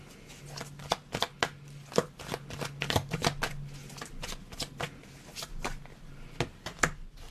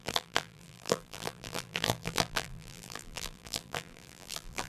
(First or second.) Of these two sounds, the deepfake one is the second